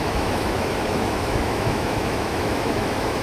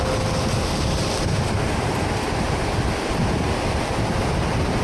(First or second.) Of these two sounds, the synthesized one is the first